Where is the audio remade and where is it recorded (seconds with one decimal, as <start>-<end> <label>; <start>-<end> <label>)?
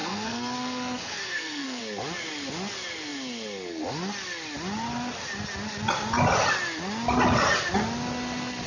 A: 0.0-1.8 remade; 1.8-8.7 recorded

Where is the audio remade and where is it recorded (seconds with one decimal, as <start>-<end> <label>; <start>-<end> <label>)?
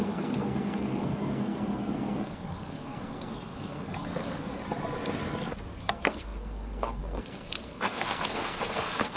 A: 0.0-4.6 remade; 4.6-5.8 recorded; 5.8-9.2 remade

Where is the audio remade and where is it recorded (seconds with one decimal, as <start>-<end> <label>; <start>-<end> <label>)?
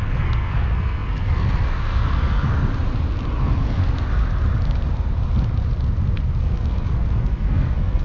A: 0.0-2.7 remade; 2.7-3.4 recorded; 3.4-3.8 remade; 3.8-6.4 recorded; 6.4-8.0 remade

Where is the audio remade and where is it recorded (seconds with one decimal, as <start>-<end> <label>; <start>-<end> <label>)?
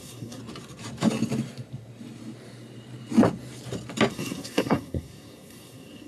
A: 0.0-0.4 remade; 0.4-4.1 recorded; 4.1-6.1 remade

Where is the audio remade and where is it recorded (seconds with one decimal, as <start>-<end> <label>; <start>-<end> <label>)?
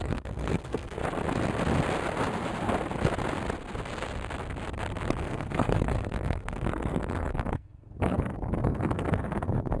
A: 0.0-1.0 remade; 1.0-5.2 recorded; 5.2-9.8 remade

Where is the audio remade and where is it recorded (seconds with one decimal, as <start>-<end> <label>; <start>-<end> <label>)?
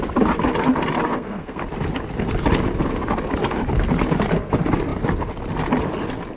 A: 0.0-1.1 recorded; 1.1-1.6 remade; 1.6-6.4 recorded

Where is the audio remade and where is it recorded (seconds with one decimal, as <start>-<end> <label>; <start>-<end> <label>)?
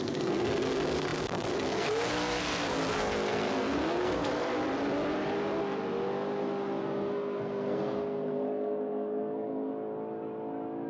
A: 0.0-4.5 remade; 4.5-6.8 recorded; 6.8-9.7 remade; 9.7-10.9 recorded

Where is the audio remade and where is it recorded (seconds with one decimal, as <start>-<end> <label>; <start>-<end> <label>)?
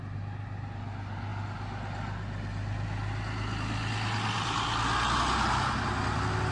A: 0.0-6.5 recorded